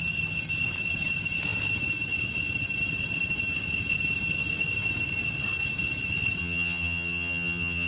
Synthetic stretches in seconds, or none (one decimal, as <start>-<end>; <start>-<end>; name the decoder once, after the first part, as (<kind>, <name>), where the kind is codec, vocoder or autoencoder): 6.4-7.9 (vocoder, HiFi-GAN)